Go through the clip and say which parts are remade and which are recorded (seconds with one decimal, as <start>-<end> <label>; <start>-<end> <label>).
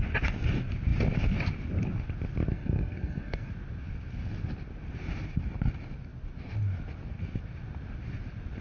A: 0.0-2.5 recorded; 2.5-3.5 remade; 3.5-8.6 recorded